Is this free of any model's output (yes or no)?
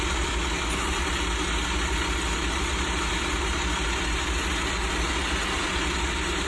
yes